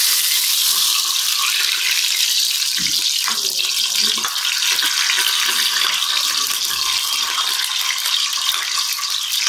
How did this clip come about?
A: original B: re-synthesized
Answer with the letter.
A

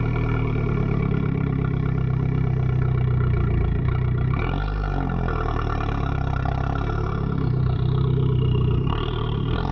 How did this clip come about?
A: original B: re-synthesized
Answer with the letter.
B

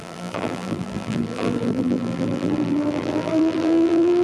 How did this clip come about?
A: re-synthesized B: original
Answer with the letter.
A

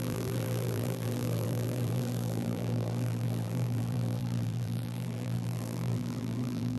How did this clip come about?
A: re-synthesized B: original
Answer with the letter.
A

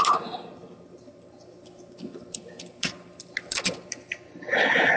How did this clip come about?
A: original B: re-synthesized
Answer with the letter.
A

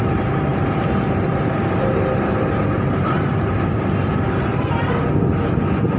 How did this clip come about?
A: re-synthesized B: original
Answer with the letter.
A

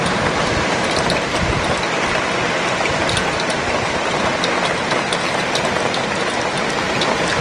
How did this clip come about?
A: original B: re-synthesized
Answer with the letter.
A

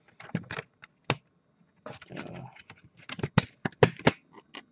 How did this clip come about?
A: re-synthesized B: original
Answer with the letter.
B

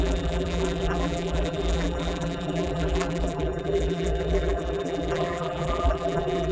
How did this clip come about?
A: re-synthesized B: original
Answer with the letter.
A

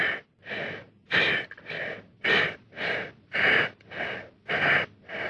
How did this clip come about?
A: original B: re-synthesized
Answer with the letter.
A